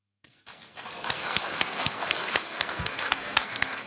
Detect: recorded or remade remade